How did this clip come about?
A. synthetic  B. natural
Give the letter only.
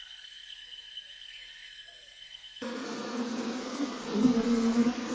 A